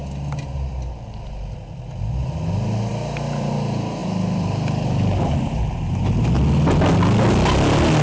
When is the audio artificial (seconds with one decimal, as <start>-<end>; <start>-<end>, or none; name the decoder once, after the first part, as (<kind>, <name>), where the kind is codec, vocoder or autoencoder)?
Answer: 2.9-3.5 (vocoder, BigVGAN v2); 4.0-5.7